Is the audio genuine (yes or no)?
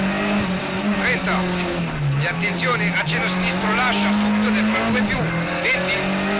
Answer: yes